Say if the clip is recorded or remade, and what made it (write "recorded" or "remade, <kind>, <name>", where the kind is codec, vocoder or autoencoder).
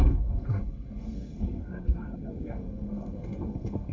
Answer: remade, codec, SNAC